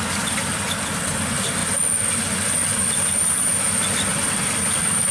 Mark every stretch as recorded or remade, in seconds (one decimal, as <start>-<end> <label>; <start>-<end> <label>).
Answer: 0.0-1.6 remade; 1.6-2.3 recorded; 2.3-5.1 remade

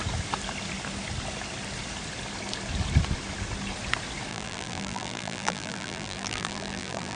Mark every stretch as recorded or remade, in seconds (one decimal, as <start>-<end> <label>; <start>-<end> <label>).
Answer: 0.0-4.3 recorded; 4.3-7.2 remade

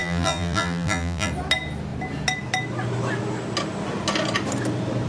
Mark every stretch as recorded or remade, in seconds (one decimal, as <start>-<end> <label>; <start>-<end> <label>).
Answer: 0.0-1.3 remade; 1.3-5.1 recorded

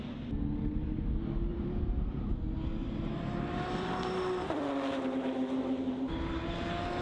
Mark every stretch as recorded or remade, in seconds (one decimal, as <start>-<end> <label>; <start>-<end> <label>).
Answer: 0.0-1.5 recorded; 1.5-2.4 remade; 2.4-2.8 recorded; 2.8-6.5 remade; 6.5-7.0 recorded

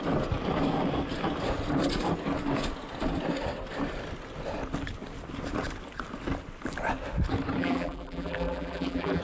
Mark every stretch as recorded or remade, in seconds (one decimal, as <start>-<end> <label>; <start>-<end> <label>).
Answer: 0.0-7.6 recorded; 7.6-9.2 remade

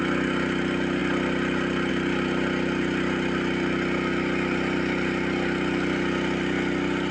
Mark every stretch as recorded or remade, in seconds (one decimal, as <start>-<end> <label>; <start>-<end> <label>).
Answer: 0.0-7.1 recorded